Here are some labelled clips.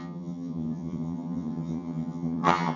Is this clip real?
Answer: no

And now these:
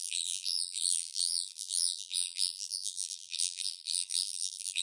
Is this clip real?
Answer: no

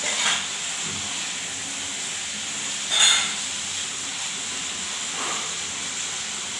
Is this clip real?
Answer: yes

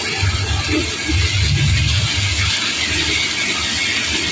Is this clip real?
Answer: yes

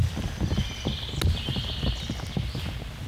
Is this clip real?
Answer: yes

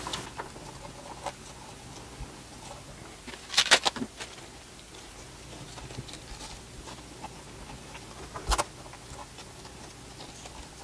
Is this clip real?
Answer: yes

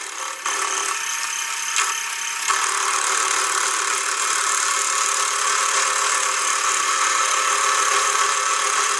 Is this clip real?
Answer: yes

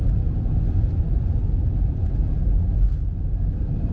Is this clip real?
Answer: yes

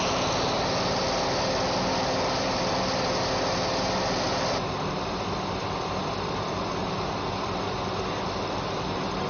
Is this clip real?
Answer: yes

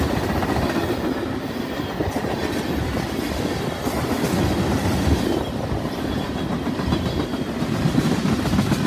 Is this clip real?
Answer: yes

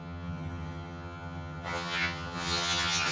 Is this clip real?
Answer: no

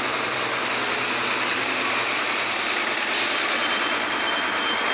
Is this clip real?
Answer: yes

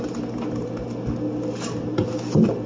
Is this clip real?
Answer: yes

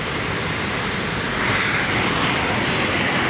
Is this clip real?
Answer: yes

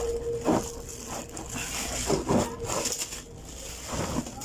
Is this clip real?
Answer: yes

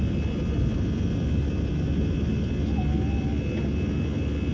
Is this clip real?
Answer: yes